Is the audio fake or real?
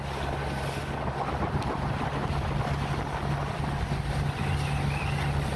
real